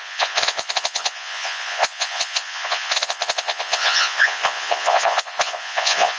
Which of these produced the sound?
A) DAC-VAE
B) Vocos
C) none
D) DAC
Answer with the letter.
B